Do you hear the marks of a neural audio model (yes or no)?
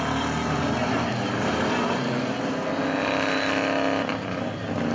no